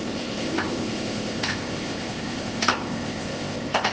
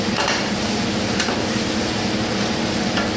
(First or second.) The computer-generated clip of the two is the first